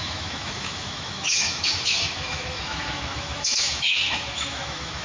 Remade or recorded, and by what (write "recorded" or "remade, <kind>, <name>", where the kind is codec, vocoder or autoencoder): remade, autoencoder, DAC-VAE